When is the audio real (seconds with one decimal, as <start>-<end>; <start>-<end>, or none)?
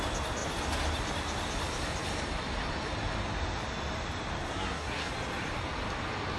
0.0-4.5; 5.1-6.4